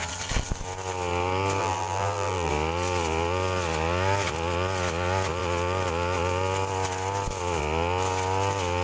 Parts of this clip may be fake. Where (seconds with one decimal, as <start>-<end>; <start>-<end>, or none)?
1.6-2.5